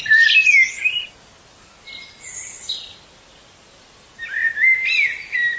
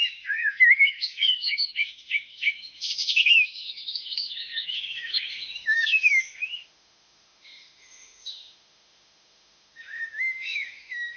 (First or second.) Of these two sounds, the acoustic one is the first